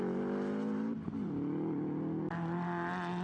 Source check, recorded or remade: recorded